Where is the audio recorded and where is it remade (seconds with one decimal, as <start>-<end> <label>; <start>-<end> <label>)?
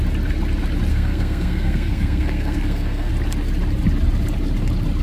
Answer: 0.0-0.9 recorded; 0.9-3.1 remade; 3.1-5.0 recorded